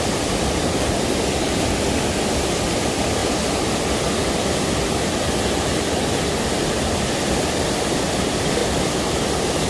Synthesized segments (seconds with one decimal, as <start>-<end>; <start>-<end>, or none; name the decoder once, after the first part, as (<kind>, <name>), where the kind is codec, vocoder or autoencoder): 0.0-3.2 (vocoder, BigVGAN v2); 3.8-9.7